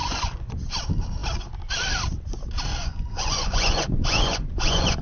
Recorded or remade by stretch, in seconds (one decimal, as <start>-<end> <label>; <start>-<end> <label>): 0.0-0.7 remade; 0.7-2.7 recorded; 2.7-5.0 remade